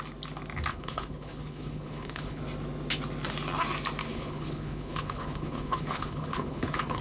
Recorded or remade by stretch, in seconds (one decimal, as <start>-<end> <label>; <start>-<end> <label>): 0.0-0.7 recorded; 0.7-2.4 remade; 2.4-4.0 recorded; 4.0-7.0 remade